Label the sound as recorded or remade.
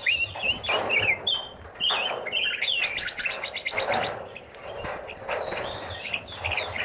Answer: recorded